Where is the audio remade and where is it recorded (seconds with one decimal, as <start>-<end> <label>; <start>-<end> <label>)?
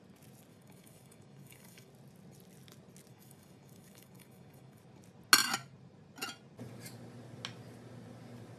0.0-0.5 recorded; 0.5-1.9 remade; 1.9-3.1 recorded; 3.1-4.8 remade; 4.8-8.6 recorded